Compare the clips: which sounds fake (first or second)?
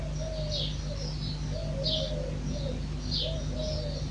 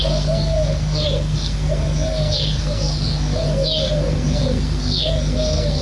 second